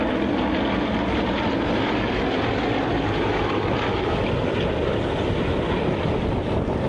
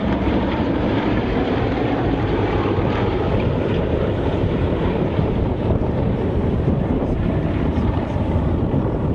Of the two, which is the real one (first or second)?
first